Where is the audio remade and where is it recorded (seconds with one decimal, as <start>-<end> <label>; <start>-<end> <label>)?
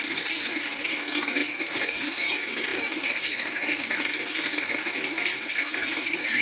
0.0-6.4 remade